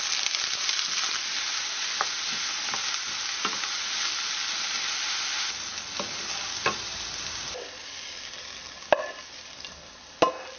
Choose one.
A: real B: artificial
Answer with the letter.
A